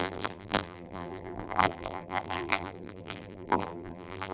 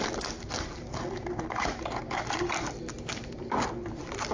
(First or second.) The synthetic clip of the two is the first